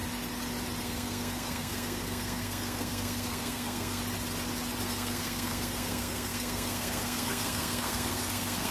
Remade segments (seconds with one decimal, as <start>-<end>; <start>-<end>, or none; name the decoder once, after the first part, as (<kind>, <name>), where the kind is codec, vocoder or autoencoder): 0.8-4.0 (codec, SNAC); 4.8-8.7